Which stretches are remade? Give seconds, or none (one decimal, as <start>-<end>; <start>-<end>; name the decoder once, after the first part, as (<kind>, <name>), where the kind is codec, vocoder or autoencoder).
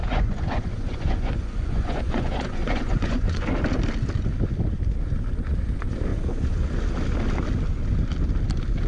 0.0-3.5 (vocoder, Vocos); 6.1-6.7